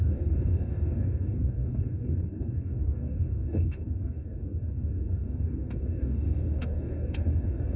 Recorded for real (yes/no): no